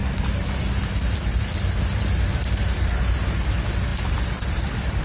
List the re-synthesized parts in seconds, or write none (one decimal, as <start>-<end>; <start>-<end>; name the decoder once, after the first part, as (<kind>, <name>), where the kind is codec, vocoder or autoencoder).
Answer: 0.0-3.0 (vocoder, BigVGAN v2); 3.9-5.0